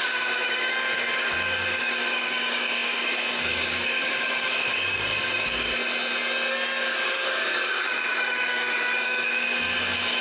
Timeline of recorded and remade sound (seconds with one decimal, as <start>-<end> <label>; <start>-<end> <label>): 0.0-5.8 remade; 5.8-6.5 recorded; 6.5-10.2 remade